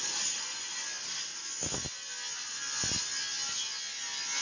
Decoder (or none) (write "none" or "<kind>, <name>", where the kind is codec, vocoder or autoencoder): none